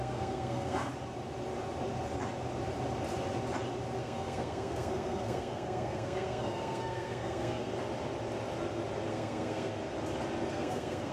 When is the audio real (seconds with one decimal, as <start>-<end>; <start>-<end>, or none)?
0.9-4.0; 7.7-9.1; 9.7-10.5